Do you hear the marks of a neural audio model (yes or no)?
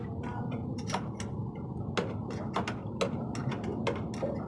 no